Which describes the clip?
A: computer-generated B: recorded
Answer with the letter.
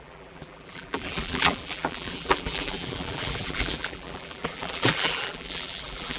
A